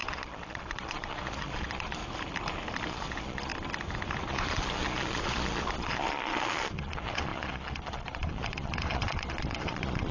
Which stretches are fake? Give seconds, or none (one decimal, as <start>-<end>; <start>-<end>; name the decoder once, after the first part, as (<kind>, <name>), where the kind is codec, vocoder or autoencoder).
0.0-2.0 (vocoder, Vocos); 2.9-3.5; 4.3-10.1